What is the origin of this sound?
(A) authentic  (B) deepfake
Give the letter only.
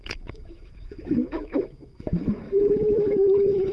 B